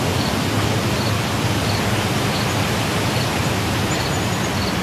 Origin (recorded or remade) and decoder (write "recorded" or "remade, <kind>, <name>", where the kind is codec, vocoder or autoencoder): recorded